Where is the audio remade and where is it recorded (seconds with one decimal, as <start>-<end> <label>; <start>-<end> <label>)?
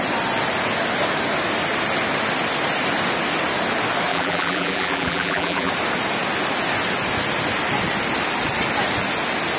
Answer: 0.0-4.1 recorded; 4.1-5.7 remade; 5.7-9.6 recorded